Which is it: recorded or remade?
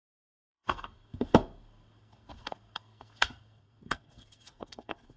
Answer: remade